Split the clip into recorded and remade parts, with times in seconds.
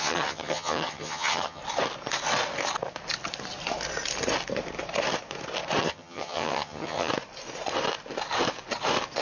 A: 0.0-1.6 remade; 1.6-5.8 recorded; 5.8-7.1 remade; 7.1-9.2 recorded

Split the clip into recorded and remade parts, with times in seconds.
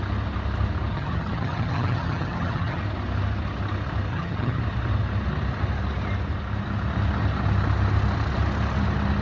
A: 0.0-0.9 recorded; 0.9-2.8 remade; 2.8-4.1 recorded; 4.1-4.6 remade; 4.6-9.2 recorded